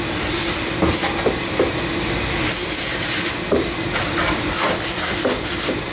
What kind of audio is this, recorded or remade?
remade